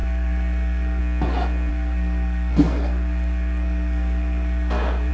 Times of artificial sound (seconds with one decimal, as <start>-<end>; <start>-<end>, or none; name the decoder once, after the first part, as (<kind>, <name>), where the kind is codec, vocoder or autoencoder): 0.0-1.0 (codec, SNAC); 1.7-5.1